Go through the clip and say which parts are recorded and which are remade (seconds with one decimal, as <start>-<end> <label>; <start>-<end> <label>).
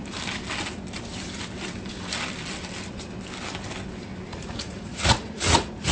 0.0-4.3 recorded; 4.3-5.9 remade